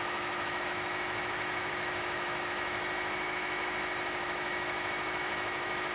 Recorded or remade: remade